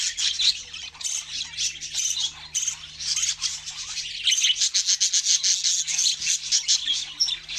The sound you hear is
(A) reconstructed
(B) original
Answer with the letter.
B